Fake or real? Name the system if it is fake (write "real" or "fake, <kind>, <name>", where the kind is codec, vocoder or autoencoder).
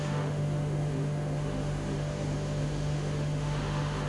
fake, autoencoder, DAC-VAE